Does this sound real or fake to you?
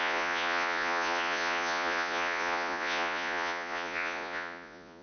fake